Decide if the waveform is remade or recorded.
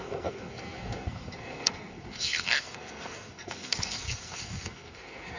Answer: remade